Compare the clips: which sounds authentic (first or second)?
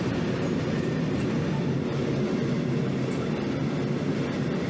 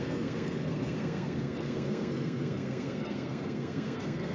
first